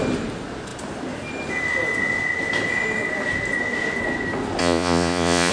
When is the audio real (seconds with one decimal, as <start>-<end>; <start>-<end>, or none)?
0.0-4.6